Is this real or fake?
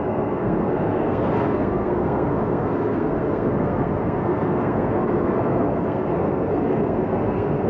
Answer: fake